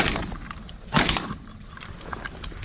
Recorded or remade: recorded